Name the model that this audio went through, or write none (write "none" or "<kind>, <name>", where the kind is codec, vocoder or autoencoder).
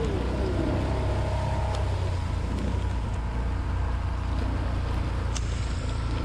none